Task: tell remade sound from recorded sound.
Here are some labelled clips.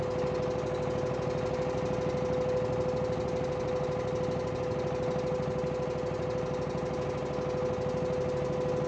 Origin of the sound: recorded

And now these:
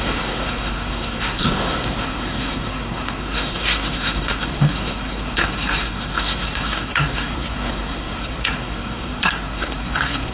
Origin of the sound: remade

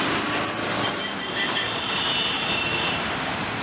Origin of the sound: remade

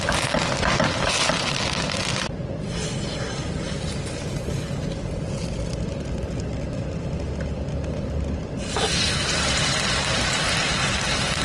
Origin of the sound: recorded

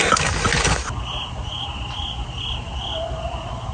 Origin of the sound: recorded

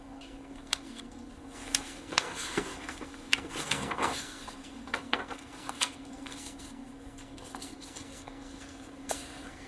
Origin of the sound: remade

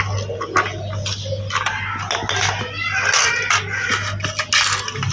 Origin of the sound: recorded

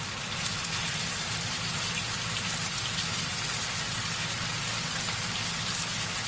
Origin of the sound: recorded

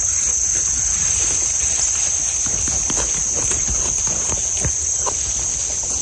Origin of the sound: recorded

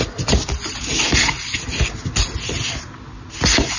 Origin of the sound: recorded